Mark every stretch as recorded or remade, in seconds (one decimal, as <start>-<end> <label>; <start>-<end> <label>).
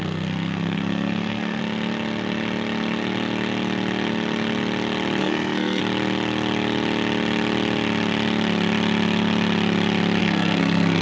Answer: 0.0-1.6 remade; 1.6-5.2 recorded; 5.2-5.8 remade; 5.8-10.2 recorded; 10.2-11.0 remade